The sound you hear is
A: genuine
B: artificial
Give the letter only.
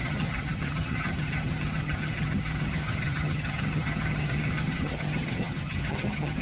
B